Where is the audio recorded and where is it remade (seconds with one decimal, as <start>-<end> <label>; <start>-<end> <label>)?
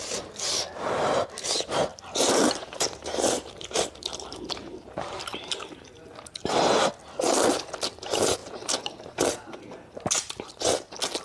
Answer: 0.0-1.9 recorded; 1.9-5.7 remade; 5.7-8.4 recorded; 8.4-9.2 remade; 9.2-11.2 recorded